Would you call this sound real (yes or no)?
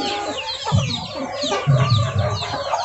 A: yes